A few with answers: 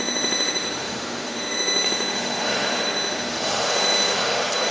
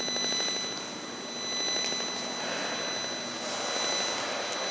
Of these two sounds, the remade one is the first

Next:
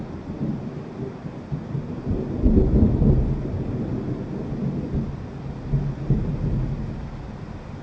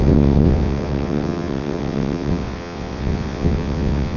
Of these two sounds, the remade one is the second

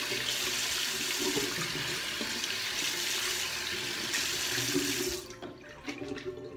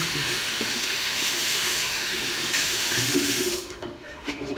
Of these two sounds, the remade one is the second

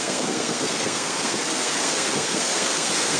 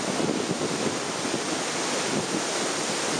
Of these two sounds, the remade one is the first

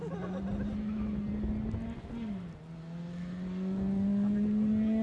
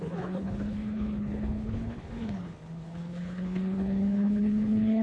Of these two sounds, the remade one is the second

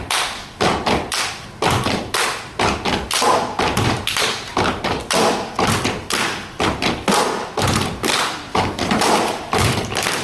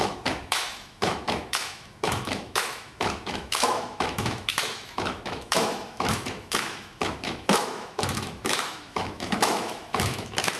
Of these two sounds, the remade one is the second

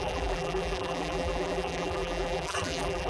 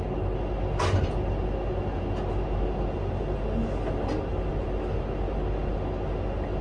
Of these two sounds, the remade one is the first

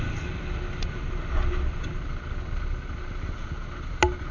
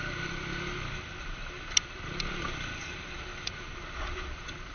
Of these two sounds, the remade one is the second